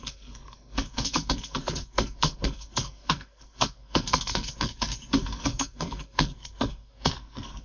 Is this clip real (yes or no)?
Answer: no